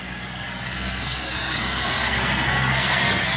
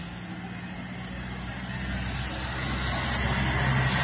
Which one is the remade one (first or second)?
first